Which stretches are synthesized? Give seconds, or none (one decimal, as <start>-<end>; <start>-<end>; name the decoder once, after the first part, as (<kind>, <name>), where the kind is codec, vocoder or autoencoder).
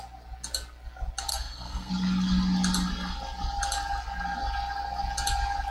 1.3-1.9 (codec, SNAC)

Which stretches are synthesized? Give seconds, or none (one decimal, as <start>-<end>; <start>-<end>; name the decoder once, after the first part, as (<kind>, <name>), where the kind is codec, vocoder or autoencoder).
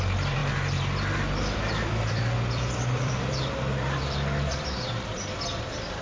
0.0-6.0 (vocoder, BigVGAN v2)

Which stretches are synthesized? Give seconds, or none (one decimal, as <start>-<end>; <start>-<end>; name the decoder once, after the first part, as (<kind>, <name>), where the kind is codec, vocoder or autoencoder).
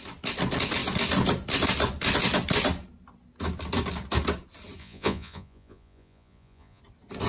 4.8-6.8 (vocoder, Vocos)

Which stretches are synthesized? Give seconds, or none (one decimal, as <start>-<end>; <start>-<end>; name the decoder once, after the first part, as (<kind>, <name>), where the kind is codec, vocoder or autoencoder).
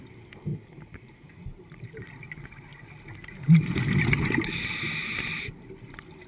0.5-2.0 (vocoder, BigVGAN v2)